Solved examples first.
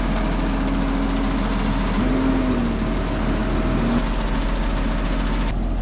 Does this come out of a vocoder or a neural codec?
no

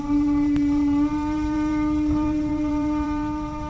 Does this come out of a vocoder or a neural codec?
yes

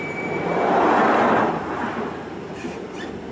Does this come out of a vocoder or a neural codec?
no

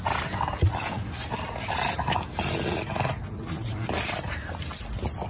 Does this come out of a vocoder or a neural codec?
no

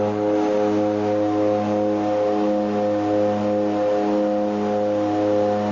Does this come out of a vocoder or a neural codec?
no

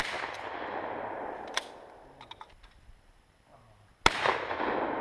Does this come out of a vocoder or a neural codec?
no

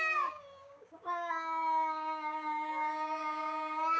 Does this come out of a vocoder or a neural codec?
yes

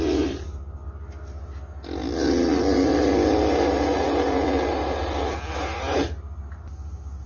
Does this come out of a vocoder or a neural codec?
no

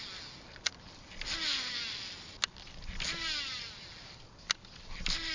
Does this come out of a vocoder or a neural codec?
no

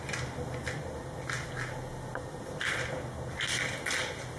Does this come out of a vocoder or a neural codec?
no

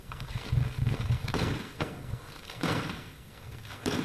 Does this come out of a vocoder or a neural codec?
yes